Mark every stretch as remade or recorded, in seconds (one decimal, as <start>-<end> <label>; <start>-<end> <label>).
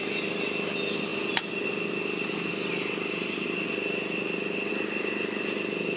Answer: 0.0-6.0 recorded